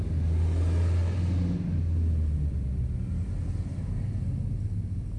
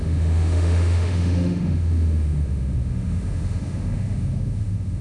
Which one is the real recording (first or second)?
first